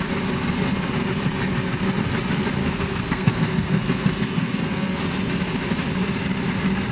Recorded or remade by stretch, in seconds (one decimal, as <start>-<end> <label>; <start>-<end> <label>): 0.0-2.6 recorded; 2.6-5.0 remade; 5.0-6.9 recorded